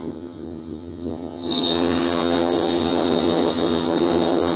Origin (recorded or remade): remade